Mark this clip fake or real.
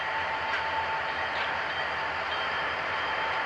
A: fake